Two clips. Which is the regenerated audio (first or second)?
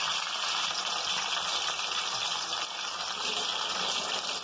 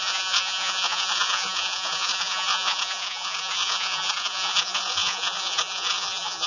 second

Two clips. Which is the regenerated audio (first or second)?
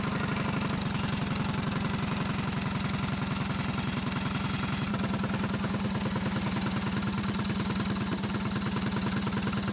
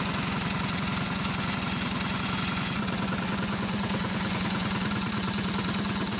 second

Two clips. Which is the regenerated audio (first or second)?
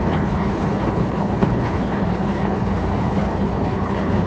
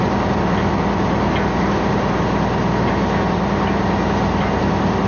first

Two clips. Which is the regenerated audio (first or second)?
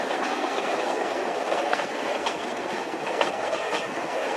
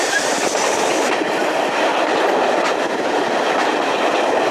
first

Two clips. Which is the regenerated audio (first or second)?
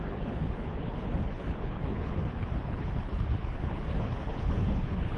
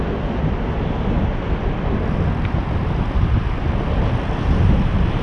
first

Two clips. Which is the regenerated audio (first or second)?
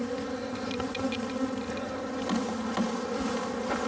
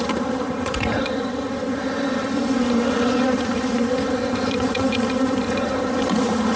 second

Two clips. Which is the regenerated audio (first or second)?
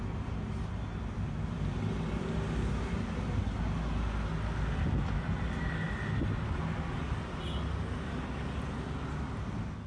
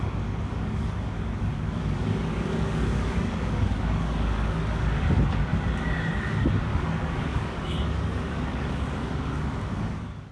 second